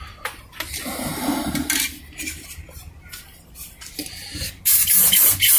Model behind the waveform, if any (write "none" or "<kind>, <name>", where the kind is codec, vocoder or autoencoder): none